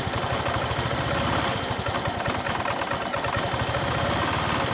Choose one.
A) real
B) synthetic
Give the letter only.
A